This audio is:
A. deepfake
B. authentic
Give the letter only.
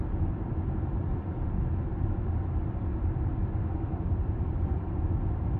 A